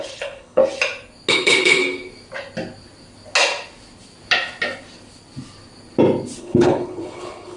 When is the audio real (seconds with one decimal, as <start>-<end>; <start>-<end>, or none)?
0.6-1.3; 1.8-6.4